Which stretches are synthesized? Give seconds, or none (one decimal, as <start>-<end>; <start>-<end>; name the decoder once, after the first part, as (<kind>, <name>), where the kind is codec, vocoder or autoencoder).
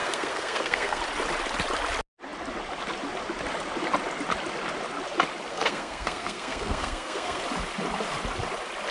0.0-1.0 (codec, SNAC); 5.5-7.4